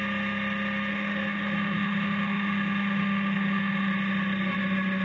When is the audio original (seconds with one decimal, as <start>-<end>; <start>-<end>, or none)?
0.0-0.9; 3.9-5.0